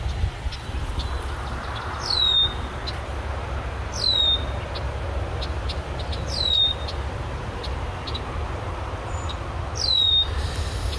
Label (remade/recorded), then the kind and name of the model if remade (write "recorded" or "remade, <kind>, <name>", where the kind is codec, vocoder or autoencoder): recorded